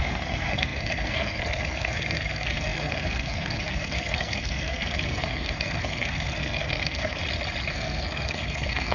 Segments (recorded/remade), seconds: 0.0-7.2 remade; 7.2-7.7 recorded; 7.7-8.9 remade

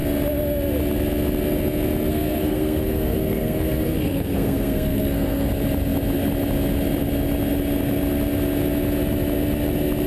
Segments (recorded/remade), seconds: 0.0-2.1 recorded; 2.1-5.5 remade; 5.5-10.1 recorded